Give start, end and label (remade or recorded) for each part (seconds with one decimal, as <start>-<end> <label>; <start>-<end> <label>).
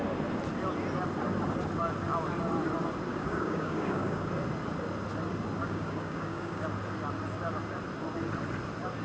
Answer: 0.0-3.1 recorded; 3.1-4.3 remade; 4.3-5.6 recorded; 5.6-6.6 remade; 6.6-9.0 recorded